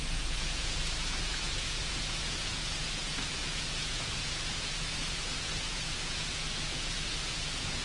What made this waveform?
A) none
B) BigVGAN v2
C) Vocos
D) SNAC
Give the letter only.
C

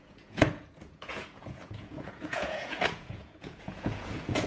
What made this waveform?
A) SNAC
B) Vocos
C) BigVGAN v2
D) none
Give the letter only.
B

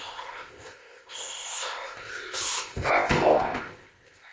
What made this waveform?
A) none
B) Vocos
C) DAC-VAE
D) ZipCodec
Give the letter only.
D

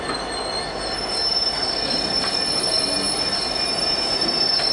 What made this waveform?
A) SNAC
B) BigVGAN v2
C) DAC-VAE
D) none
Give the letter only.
D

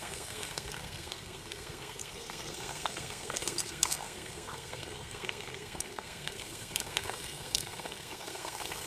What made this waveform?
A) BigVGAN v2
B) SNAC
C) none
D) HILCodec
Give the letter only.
B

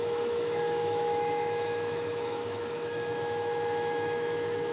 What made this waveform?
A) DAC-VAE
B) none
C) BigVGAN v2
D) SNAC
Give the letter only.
A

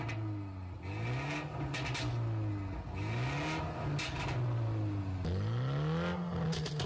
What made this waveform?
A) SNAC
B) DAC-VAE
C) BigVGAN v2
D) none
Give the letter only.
D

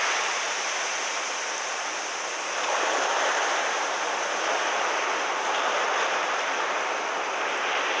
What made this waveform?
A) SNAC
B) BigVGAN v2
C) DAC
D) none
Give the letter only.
D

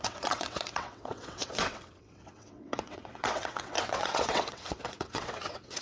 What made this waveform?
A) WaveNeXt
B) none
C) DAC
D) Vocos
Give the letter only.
A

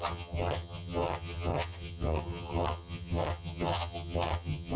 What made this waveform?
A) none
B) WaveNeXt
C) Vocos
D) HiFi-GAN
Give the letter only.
D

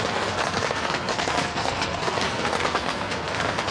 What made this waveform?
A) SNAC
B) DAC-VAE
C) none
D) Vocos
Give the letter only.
A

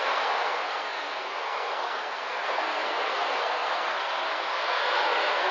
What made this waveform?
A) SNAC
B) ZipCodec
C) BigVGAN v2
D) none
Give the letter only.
A